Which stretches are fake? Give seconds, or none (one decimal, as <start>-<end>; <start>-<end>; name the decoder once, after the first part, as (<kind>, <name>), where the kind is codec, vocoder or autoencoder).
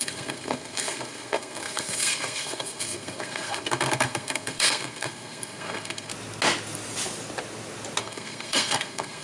0.0-6.1 (codec, SNAC); 8.0-9.2